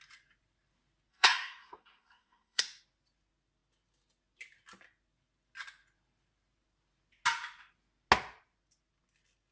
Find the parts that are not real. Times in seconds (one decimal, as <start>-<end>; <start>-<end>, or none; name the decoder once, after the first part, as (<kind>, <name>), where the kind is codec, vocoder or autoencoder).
1.1-2.6 (codec, SNAC)